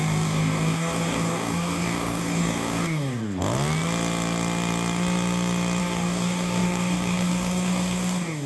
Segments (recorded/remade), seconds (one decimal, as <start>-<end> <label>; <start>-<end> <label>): 0.0-3.2 remade; 3.2-5.8 recorded; 5.8-8.5 remade